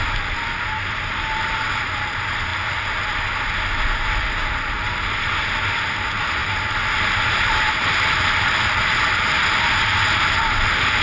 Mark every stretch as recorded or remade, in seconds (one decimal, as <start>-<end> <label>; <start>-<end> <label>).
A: 0.0-11.0 recorded